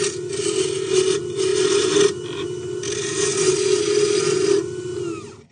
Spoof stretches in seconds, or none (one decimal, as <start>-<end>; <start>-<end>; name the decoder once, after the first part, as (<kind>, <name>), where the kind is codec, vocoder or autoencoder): none